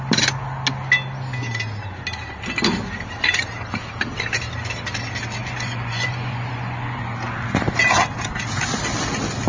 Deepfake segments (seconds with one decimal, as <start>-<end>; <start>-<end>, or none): 5.4-7.0